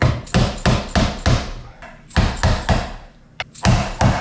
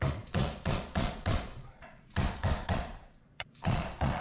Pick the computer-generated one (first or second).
second